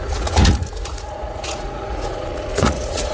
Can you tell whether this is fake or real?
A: fake